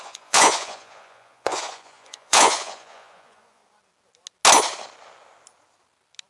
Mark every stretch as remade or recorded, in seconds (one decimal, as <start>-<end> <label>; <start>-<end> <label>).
0.0-3.6 remade; 3.6-6.3 recorded